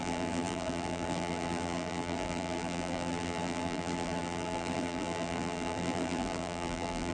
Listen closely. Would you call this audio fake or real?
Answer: fake